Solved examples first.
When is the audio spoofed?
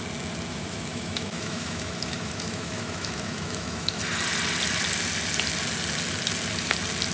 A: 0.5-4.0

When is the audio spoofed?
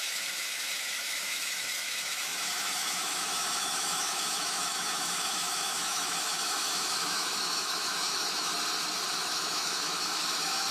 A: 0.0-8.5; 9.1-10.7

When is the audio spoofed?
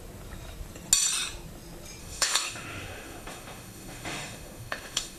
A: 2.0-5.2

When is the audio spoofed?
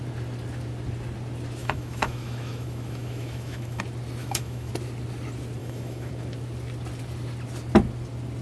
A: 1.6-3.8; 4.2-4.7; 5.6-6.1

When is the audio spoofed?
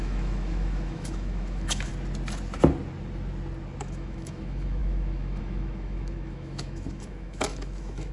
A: 0.0-1.9; 3.8-8.1